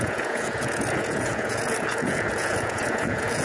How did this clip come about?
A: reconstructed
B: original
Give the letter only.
A